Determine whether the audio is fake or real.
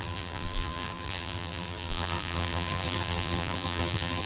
fake